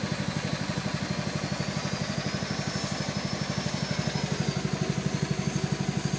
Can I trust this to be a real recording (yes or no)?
yes